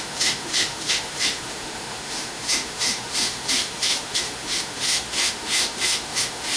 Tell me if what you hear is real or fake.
fake